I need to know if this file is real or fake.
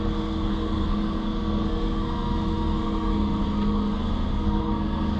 fake